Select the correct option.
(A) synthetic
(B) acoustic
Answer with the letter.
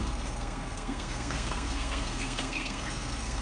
A